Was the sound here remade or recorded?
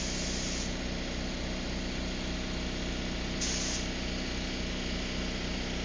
recorded